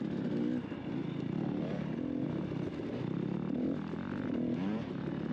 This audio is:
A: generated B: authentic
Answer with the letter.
B